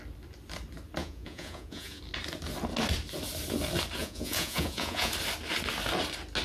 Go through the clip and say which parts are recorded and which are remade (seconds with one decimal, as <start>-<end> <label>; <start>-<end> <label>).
0.0-1.0 recorded; 1.0-2.0 remade; 2.0-4.0 recorded; 4.0-5.1 remade; 5.1-6.4 recorded